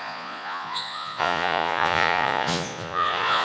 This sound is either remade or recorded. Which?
remade